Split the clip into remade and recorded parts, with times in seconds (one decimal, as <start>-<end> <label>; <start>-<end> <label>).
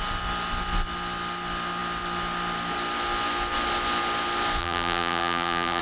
0.0-4.6 recorded; 4.6-5.8 remade